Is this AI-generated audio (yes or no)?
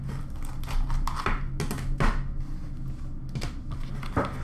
no